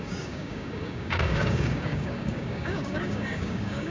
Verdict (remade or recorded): remade